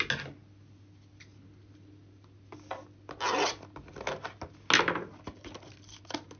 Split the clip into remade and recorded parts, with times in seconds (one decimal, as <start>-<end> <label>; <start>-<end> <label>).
0.0-6.4 recorded